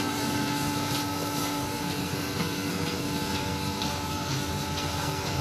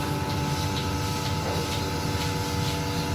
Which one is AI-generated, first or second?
first